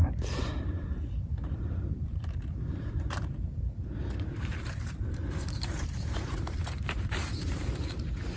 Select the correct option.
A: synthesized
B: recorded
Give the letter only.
A